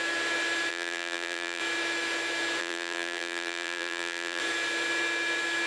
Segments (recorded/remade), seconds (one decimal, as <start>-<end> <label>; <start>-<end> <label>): 0.0-0.7 recorded; 0.7-1.6 remade; 1.6-2.6 recorded; 2.6-4.4 remade; 4.4-5.7 recorded

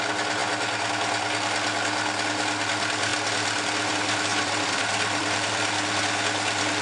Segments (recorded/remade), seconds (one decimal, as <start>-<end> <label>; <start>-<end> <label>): 0.0-4.3 recorded; 4.3-6.0 remade; 6.0-6.8 recorded

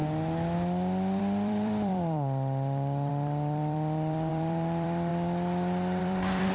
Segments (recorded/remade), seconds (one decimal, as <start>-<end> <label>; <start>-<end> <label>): 0.0-1.2 recorded; 1.2-5.1 remade; 5.1-6.0 recorded; 6.0-6.5 remade

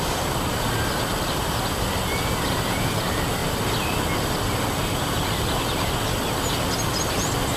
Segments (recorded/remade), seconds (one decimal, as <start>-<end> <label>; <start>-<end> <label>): 0.0-2.1 recorded; 2.1-2.8 remade; 2.8-7.6 recorded

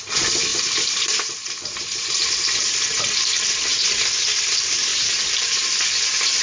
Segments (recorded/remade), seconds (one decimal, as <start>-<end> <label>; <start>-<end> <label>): 0.0-6.4 remade